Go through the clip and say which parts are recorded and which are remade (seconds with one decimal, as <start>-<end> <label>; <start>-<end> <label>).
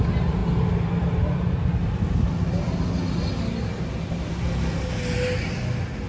0.0-6.1 recorded